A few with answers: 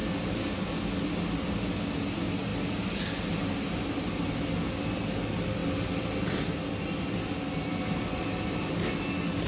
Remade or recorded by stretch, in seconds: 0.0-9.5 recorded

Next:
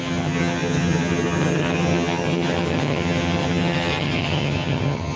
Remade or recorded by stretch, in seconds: 0.0-5.2 remade

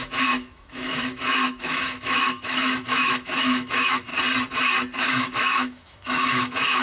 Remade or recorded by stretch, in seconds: 0.0-4.1 remade; 4.1-5.0 recorded; 5.0-6.8 remade

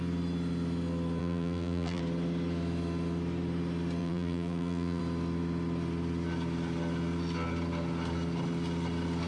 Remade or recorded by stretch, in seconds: 0.0-1.2 recorded; 1.2-2.0 remade; 2.0-4.0 recorded; 4.0-5.0 remade; 5.0-9.3 recorded

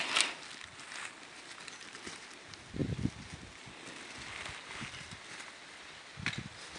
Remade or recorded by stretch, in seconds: 0.0-6.8 recorded